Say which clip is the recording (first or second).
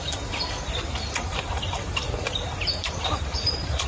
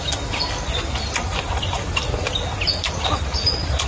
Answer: second